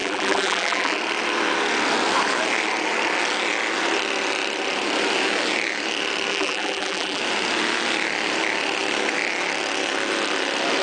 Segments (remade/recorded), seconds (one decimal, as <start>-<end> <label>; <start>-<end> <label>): 0.0-1.0 remade; 1.0-6.3 recorded; 6.3-7.2 remade; 7.2-10.8 recorded